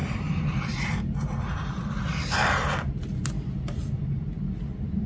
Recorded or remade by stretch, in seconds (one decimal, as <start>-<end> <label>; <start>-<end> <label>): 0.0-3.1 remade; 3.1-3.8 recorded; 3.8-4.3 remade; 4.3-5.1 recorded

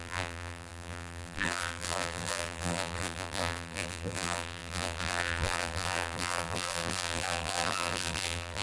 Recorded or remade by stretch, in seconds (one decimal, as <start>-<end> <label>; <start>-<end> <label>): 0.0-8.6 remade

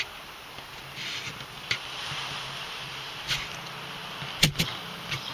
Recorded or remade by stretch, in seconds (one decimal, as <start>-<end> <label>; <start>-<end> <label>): 0.0-0.8 recorded; 0.8-2.9 remade; 2.9-4.0 recorded; 4.0-5.3 remade

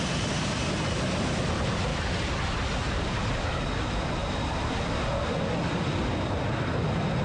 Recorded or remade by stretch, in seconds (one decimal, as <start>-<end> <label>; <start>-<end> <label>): 0.0-7.2 recorded

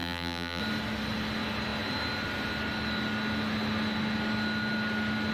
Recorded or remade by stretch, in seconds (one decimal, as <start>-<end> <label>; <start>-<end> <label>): 0.0-0.6 remade; 0.6-5.3 recorded